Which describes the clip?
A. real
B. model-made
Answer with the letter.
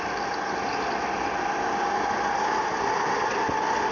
A